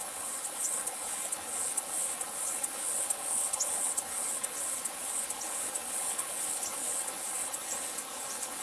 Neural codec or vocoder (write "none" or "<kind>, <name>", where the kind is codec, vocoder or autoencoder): codec, HILCodec